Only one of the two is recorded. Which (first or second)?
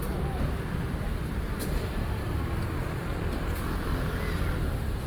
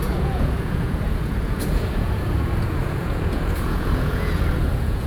first